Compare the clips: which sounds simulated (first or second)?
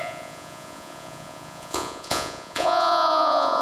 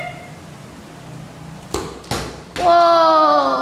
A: first